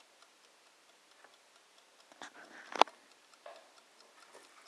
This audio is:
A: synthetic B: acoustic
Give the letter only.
B